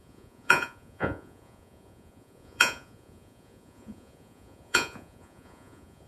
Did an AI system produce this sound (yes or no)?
yes